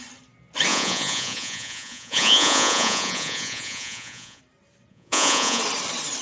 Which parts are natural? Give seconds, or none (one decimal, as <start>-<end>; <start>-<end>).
0.0-0.7; 4.4-4.9; 5.6-6.2